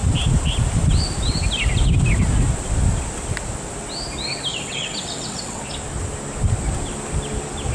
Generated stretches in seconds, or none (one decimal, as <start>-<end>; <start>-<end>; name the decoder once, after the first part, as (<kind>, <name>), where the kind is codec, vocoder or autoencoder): 4.5-5.6 (vocoder, WaveNeXt)